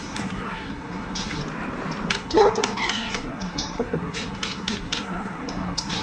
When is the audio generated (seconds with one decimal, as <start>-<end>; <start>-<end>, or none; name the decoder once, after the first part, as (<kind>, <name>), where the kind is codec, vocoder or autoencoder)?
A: 0.0-1.4 (codec, SNAC); 2.1-6.0